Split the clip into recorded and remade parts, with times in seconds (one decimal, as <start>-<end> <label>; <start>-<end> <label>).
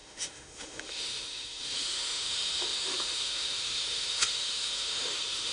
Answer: 0.0-5.5 remade